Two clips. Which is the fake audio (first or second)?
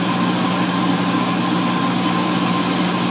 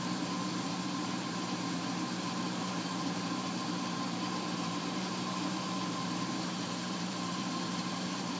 second